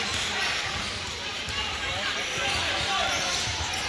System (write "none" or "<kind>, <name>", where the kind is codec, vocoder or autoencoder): none